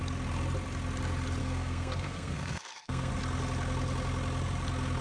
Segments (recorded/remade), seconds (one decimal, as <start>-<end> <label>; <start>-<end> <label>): 0.0-1.4 recorded; 1.4-3.1 remade; 3.1-5.0 recorded